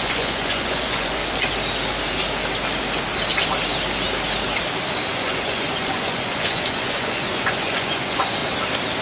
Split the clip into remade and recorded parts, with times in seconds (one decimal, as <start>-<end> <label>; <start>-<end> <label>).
0.0-1.2 remade; 1.2-5.1 recorded; 5.1-8.4 remade; 8.4-9.0 recorded